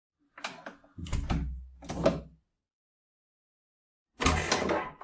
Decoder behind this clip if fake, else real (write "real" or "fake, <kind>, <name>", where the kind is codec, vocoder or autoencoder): real